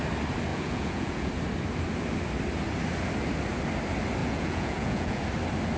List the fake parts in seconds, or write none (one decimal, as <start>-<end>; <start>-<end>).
0.5-1.3; 4.2-5.2